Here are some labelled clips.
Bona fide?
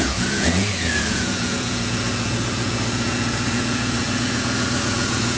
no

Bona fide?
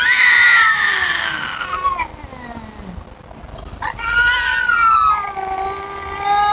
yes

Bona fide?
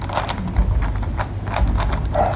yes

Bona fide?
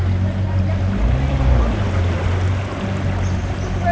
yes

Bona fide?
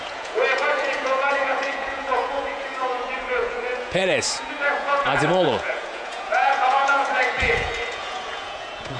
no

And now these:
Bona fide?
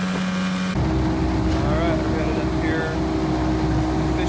yes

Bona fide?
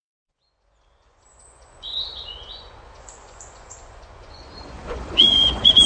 no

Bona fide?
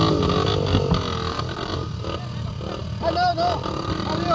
yes